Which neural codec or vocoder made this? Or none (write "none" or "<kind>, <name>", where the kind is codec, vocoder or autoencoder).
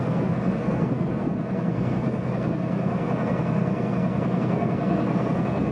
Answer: codec, SNAC